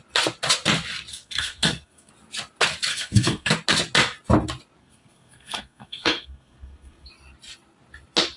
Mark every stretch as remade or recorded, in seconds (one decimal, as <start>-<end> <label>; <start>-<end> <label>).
0.0-1.1 recorded; 1.1-2.1 remade; 2.1-2.9 recorded; 2.9-3.5 remade; 3.5-4.8 recorded; 4.8-7.1 remade; 7.1-8.4 recorded